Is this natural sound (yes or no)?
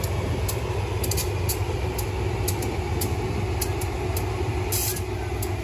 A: yes